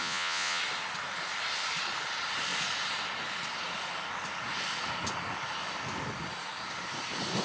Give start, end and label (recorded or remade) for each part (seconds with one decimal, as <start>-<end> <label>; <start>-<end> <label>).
0.0-0.6 remade; 0.6-7.4 recorded